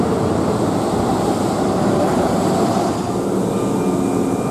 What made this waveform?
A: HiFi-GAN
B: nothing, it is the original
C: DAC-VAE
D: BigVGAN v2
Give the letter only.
B